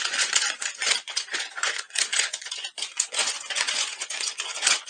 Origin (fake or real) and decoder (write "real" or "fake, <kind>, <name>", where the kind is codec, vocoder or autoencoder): fake, vocoder, Vocos